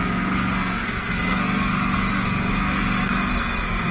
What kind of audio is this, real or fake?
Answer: fake